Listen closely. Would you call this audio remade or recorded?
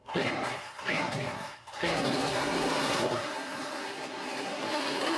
remade